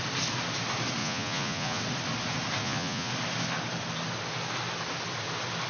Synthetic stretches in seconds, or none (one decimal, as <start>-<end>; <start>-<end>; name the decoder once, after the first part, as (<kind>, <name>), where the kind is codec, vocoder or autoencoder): 1.0-1.8 (vocoder, Vocos); 2.6-3.1